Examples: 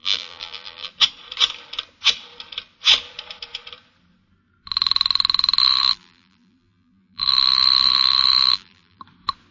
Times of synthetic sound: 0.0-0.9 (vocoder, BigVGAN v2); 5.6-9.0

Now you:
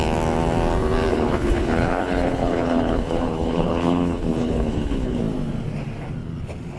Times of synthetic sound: 1.1-5.2 (codec, HILCodec)

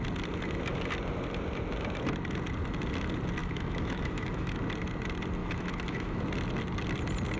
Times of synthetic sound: 3.4-4.6 (autoencoder, DAC-VAE); 5.4-6.2